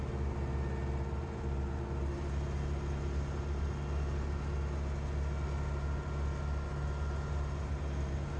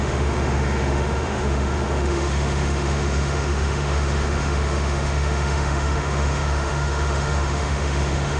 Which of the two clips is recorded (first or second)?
first